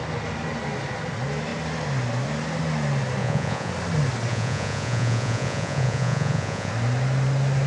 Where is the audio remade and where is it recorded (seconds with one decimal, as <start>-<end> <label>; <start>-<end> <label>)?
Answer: 0.0-3.2 recorded; 3.2-3.7 remade; 3.7-4.3 recorded; 4.3-6.7 remade; 6.7-7.7 recorded